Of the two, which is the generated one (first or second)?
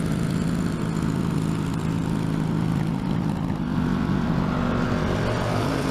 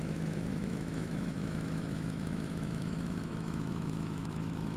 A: second